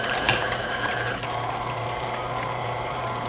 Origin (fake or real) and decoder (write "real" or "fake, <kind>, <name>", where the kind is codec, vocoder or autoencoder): fake, vocoder, BigVGAN v2